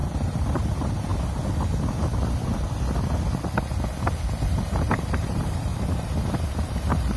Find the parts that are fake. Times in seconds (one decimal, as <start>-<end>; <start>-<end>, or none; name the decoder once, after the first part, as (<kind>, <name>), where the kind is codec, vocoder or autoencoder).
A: 0.0-1.1 (vocoder, BigVGAN v2); 4.4-5.7; 6.5-7.2